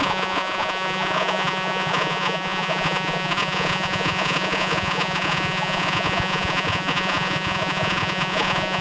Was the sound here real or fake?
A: fake